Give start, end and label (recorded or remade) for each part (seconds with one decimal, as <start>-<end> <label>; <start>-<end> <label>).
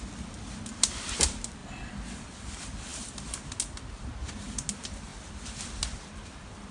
0.0-6.7 recorded